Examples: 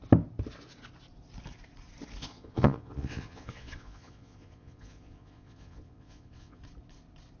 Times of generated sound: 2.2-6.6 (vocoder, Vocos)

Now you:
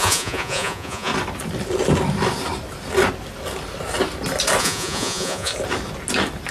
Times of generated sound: 0.0-1.1 (vocoder, Vocos); 4.6-5.5

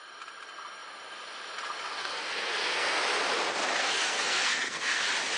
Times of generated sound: 2.0-3.0 (codec, SNAC); 3.8-5.0

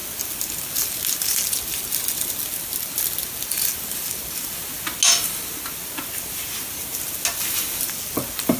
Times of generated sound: none

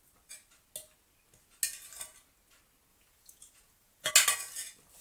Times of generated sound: 2.9-4.1 (vocoder, Vocos)

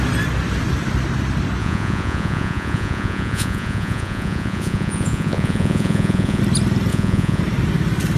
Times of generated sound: 1.6-6.4 (vocoder, Vocos); 6.9-7.4